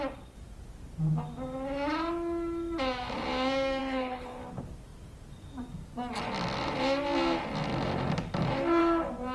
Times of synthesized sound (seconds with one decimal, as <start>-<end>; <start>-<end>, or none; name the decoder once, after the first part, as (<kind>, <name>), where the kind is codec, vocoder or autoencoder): 3.8-4.4 (codec, HILCodec)